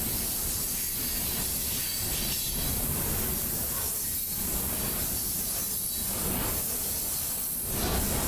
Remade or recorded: recorded